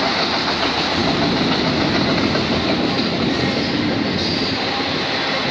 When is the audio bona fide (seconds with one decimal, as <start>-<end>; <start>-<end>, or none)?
0.0-5.5